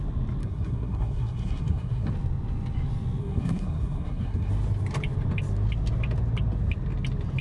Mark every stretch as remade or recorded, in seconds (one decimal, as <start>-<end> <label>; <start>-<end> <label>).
0.0-0.4 recorded; 0.4-2.1 remade; 2.1-3.2 recorded; 3.2-4.5 remade; 4.5-7.4 recorded